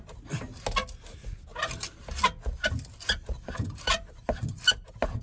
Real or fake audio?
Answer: real